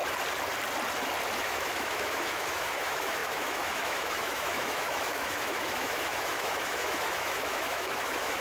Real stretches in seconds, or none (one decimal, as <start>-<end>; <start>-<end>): 0.0-1.4